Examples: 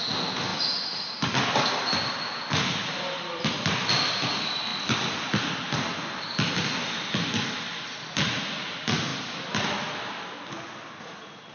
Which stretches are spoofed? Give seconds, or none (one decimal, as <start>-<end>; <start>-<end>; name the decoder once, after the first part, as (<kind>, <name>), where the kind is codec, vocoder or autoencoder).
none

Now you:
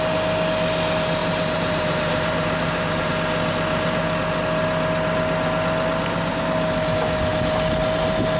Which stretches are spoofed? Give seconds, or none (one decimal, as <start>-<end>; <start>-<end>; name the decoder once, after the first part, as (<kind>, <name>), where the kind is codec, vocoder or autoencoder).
1.2-3.1 (vocoder, BigVGAN v2)

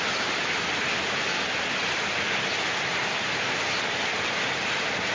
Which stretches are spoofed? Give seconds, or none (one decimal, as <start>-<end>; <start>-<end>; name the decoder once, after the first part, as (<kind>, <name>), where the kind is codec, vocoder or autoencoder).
none